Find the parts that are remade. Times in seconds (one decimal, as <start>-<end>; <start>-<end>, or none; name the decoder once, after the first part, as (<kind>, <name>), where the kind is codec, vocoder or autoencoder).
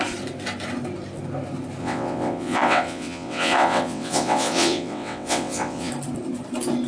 1.8-5.9 (vocoder, WaveNeXt)